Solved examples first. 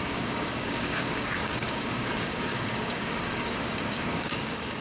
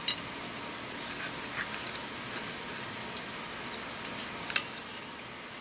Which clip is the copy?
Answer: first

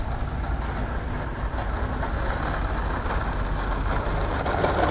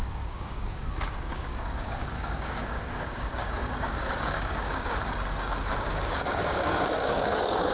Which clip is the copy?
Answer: second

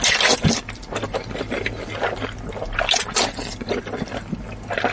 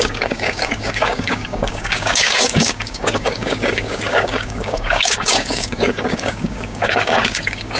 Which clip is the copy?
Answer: second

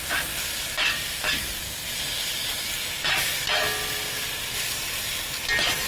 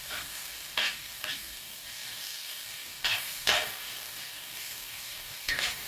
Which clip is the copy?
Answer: second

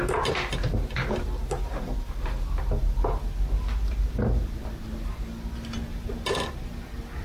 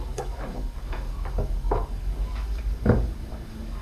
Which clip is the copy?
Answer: second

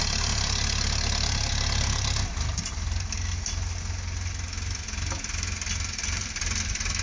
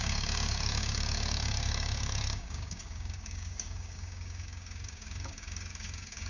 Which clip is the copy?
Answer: second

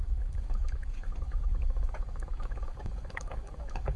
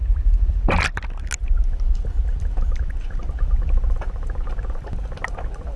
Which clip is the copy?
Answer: first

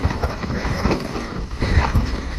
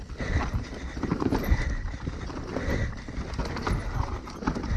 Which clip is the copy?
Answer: first